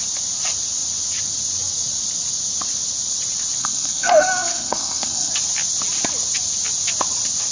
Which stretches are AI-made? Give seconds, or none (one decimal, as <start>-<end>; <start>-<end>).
3.6-5.3